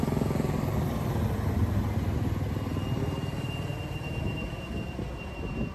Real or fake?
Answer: real